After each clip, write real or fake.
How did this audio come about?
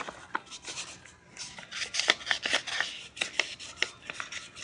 real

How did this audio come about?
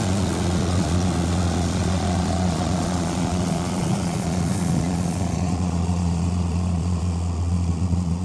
fake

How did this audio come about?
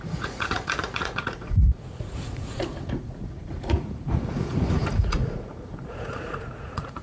fake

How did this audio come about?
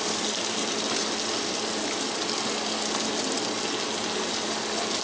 real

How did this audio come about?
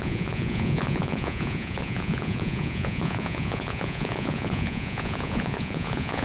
fake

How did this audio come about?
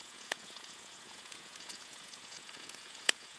fake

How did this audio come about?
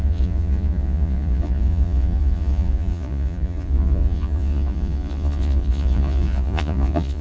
fake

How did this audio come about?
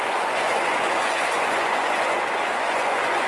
fake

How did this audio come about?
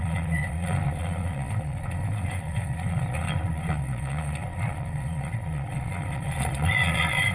fake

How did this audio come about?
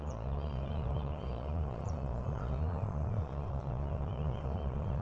fake